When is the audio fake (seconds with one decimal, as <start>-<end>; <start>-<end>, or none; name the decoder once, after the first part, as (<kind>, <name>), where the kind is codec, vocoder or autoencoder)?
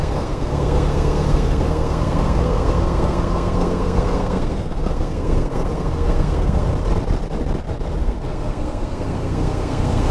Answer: 0.0-6.7 (codec, SNAC); 8.0-10.1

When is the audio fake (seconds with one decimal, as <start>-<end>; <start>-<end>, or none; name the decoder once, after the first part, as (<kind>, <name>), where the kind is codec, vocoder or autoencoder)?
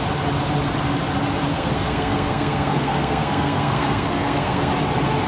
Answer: 1.5-4.7 (codec, SNAC)